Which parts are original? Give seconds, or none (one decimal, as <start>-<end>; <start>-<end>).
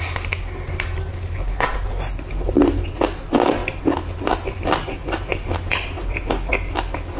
0.0-7.2